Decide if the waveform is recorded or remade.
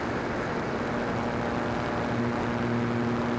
recorded